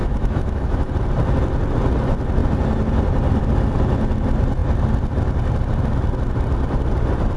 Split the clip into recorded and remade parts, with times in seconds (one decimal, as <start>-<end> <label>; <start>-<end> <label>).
0.0-0.9 remade; 0.9-7.4 recorded